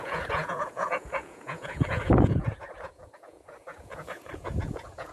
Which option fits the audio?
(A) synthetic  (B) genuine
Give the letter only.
A